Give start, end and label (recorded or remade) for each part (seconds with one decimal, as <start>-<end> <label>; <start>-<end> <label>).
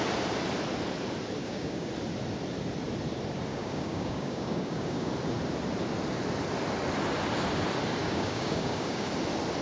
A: 0.0-1.4 recorded; 1.4-1.9 remade; 1.9-3.5 recorded; 3.5-5.1 remade; 5.1-8.0 recorded; 8.0-9.1 remade; 9.1-9.6 recorded